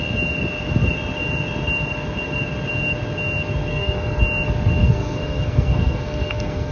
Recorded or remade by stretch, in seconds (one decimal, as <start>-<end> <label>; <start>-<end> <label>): 0.0-3.7 recorded; 3.7-4.2 remade; 4.2-4.8 recorded; 4.8-6.7 remade